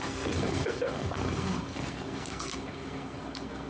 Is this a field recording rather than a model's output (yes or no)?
no